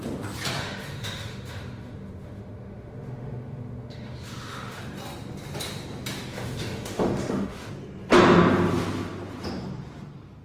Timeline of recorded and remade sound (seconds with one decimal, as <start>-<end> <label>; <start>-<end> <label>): 0.0-0.6 recorded; 0.6-4.8 remade; 4.8-6.3 recorded; 6.3-7.7 remade; 7.7-10.4 recorded